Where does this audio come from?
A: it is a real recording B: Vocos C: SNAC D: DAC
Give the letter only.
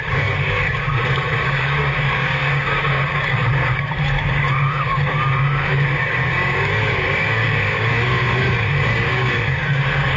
D